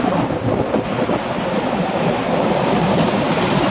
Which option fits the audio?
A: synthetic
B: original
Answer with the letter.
B